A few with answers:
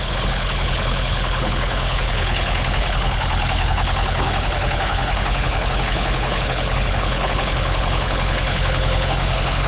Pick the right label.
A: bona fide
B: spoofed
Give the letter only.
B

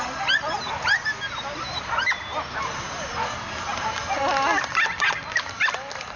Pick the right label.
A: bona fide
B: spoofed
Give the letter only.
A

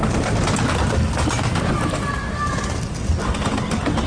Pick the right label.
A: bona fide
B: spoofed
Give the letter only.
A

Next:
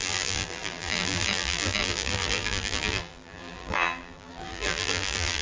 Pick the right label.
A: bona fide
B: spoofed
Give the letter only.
B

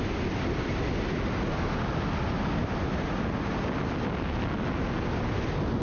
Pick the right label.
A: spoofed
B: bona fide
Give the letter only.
B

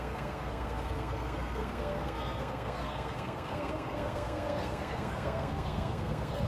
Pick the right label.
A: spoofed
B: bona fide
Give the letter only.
A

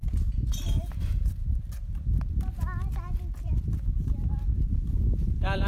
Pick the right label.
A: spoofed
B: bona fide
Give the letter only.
B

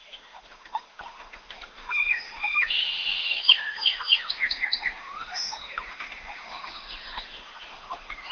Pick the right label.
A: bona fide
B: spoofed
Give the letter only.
B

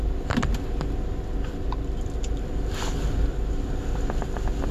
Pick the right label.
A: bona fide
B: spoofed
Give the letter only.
A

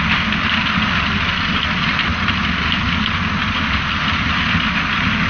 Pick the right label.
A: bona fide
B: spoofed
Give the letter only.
A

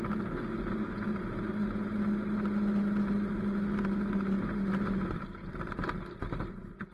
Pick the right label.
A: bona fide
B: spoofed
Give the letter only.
A